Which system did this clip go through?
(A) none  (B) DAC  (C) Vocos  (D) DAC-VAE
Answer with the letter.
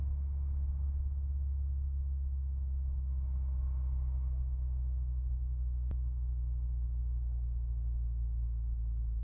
A